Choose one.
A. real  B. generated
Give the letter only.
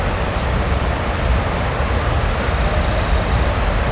A